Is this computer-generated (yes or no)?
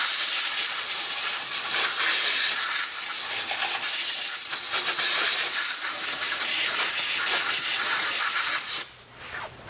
yes